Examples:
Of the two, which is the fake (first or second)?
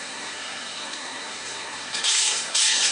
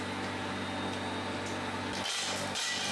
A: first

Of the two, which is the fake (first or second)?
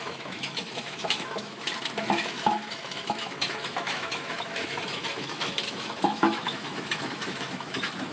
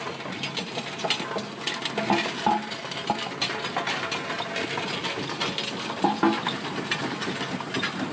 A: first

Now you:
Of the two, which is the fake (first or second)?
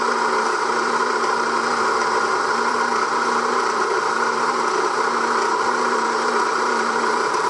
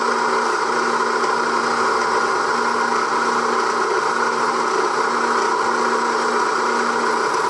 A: first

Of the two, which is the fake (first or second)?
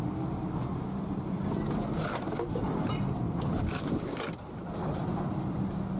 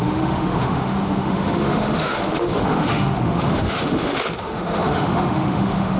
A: second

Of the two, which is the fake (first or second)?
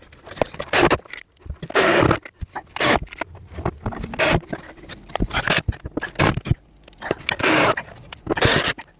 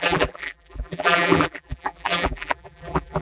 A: second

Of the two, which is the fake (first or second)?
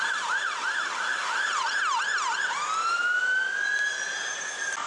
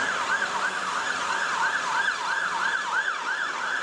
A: second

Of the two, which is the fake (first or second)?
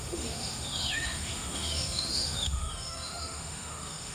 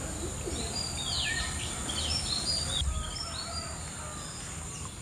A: first